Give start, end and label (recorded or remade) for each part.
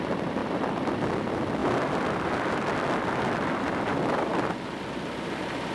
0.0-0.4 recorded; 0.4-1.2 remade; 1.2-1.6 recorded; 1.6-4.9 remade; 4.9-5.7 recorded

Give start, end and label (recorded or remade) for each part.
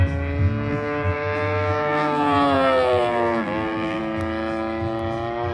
0.0-0.7 recorded; 0.7-4.0 remade; 4.0-5.5 recorded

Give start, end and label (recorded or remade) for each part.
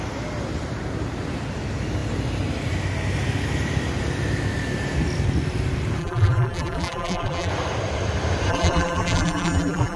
0.0-6.0 recorded; 6.0-7.5 remade; 7.5-8.5 recorded; 8.5-10.0 remade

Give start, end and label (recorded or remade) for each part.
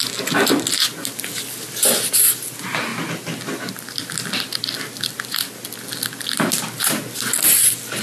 0.0-8.0 recorded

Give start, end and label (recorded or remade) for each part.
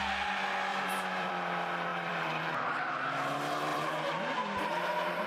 0.0-0.7 recorded; 0.7-1.3 remade; 1.3-1.9 recorded; 1.9-2.5 remade; 2.5-3.7 recorded; 3.7-5.3 remade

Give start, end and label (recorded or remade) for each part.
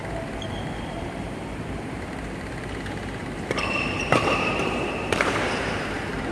0.0-2.1 remade; 2.1-3.2 recorded; 3.2-6.3 remade